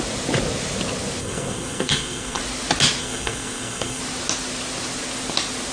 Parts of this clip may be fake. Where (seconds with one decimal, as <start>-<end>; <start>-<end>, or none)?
1.2-2.4; 3.0-4.0